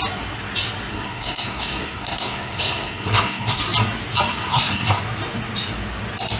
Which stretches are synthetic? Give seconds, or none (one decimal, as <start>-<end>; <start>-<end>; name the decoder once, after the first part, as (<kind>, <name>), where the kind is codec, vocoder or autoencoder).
0.9-3.6 (codec, SNAC); 4.3-5.0